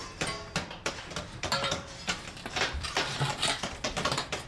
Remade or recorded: remade